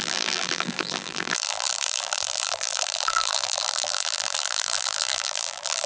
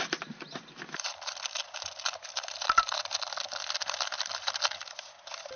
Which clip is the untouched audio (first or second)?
second